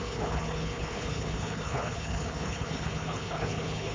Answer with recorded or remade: remade